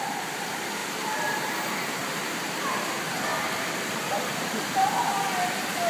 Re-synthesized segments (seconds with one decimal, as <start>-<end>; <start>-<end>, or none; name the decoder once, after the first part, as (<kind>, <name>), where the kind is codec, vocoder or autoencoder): 0.8-1.5 (vocoder, BigVGAN v2); 2.0-2.6; 4.3-5.0